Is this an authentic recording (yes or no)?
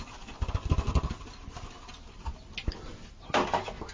yes